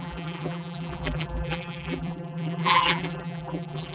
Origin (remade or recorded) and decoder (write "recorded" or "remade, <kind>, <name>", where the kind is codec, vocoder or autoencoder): remade, vocoder, BigVGAN v2